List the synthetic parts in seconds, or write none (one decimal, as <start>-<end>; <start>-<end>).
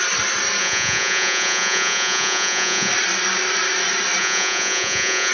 0.6-2.9; 4.2-5.3